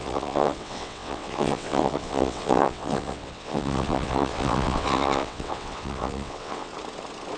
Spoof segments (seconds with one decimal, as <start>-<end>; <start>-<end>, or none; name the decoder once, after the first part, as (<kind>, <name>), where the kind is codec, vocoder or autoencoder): 0.0-6.7 (vocoder, WaveNeXt)